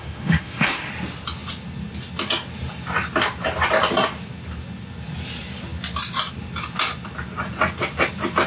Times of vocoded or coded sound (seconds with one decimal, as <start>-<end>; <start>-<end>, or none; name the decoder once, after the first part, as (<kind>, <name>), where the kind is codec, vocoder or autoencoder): 0.0-0.9 (autoencoder, DAC-VAE)